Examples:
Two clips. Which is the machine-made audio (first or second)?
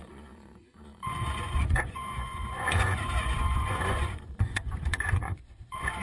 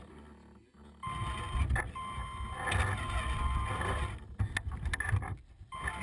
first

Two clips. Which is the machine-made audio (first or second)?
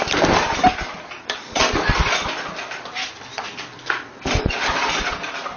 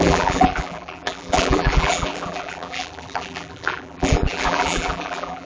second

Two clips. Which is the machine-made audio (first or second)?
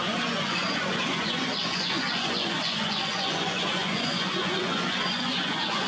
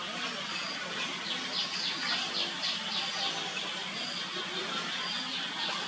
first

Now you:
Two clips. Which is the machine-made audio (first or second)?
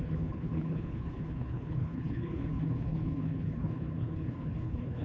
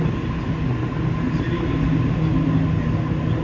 first